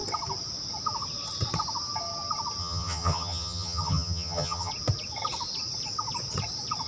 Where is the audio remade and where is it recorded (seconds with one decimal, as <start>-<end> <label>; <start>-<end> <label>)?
0.0-2.6 recorded; 2.6-4.7 remade; 4.7-6.9 recorded